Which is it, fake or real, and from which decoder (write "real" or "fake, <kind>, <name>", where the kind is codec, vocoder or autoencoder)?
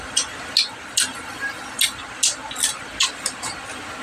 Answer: real